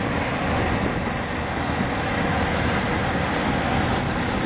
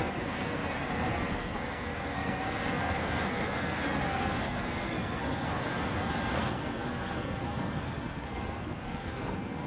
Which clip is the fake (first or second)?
second